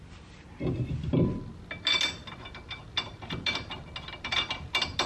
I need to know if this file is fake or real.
real